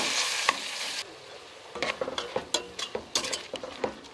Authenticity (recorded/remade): recorded